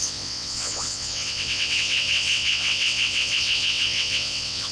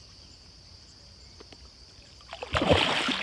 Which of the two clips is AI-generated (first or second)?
first